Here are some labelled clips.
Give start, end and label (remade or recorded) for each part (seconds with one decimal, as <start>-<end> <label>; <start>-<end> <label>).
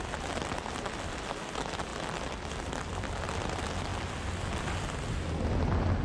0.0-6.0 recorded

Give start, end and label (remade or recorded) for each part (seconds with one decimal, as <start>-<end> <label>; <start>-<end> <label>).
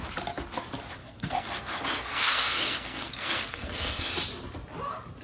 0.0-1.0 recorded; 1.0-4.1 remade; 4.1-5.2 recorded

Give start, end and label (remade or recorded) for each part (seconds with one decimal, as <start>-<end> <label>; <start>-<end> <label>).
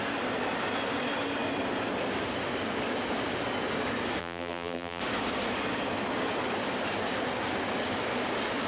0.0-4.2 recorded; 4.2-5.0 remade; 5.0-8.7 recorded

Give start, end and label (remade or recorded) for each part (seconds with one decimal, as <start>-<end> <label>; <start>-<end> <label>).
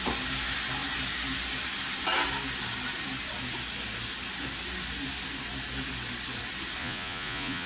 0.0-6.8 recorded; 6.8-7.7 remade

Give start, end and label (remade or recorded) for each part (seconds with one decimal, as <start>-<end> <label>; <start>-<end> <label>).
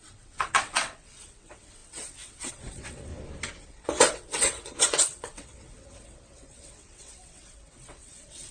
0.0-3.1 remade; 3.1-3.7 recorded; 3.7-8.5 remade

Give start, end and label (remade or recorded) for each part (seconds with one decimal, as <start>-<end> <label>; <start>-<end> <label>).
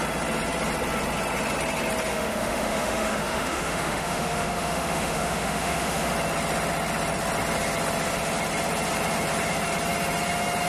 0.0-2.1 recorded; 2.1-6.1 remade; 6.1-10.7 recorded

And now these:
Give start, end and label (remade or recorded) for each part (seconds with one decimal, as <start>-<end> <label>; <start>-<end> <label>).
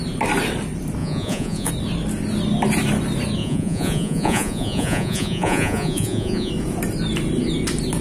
0.0-1.0 recorded; 1.0-1.7 remade; 1.7-3.4 recorded; 3.4-6.5 remade; 6.5-8.0 recorded